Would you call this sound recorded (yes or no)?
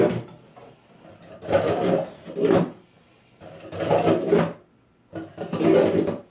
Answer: yes